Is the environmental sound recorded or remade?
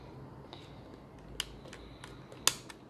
recorded